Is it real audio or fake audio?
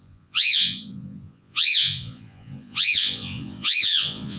fake